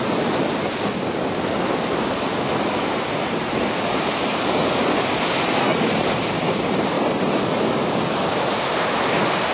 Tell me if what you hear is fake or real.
real